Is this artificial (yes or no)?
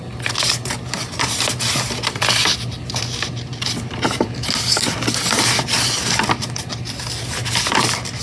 no